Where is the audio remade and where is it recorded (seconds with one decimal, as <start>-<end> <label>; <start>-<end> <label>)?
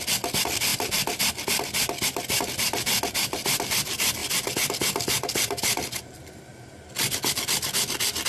0.0-8.3 recorded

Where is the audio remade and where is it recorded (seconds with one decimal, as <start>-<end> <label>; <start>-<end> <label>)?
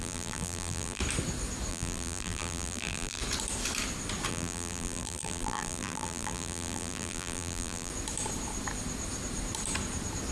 0.0-1.0 remade; 1.0-1.7 recorded; 1.7-3.2 remade; 3.2-4.3 recorded; 4.3-7.9 remade; 7.9-10.3 recorded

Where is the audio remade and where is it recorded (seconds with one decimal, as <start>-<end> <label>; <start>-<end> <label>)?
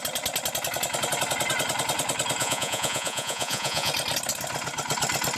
0.0-2.4 recorded; 2.4-3.9 remade; 3.9-5.4 recorded